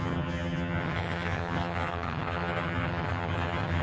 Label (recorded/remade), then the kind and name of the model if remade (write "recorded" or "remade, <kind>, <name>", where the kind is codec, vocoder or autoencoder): remade, vocoder, HiFi-GAN